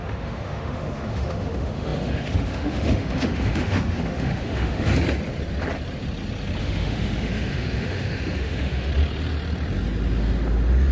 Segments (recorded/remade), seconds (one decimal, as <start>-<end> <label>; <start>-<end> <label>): 0.0-4.9 remade; 4.9-6.6 recorded; 6.6-8.9 remade; 8.9-10.9 recorded